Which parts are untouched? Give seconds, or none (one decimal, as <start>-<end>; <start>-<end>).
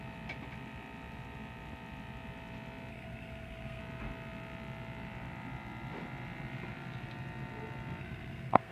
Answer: 0.0-2.9; 3.8-8.0